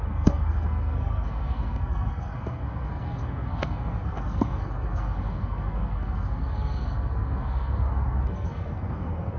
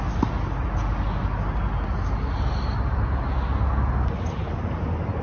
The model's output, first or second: first